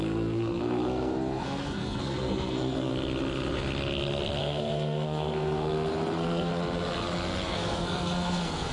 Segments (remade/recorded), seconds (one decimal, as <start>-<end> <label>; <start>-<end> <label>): 0.0-2.9 remade; 2.9-4.4 recorded; 4.4-6.5 remade; 6.5-7.5 recorded; 7.5-8.7 remade

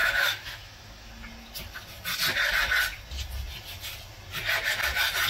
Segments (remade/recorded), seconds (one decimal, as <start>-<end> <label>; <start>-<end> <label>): 0.0-1.1 remade; 1.1-5.3 recorded

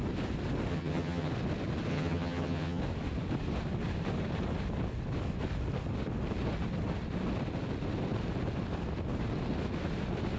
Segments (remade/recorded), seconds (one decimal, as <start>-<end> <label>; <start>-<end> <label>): 0.0-0.7 recorded; 0.7-1.3 remade; 1.3-1.9 recorded; 1.9-2.8 remade; 2.8-10.4 recorded